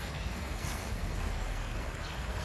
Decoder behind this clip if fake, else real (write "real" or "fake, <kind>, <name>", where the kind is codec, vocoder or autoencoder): fake, codec, SNAC